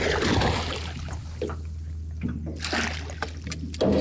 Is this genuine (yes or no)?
yes